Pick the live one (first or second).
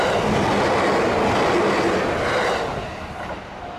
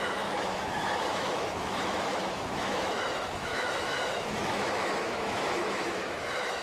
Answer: first